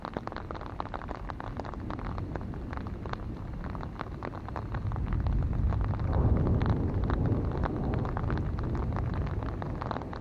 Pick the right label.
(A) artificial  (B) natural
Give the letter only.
B